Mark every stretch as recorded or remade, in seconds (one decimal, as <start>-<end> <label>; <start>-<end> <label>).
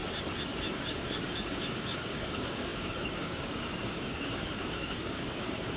0.0-0.7 recorded; 0.7-5.8 remade